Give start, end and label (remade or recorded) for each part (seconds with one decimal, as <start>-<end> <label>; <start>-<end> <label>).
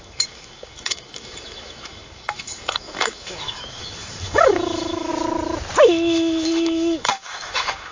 0.0-5.1 remade; 5.1-5.8 recorded; 5.8-7.9 remade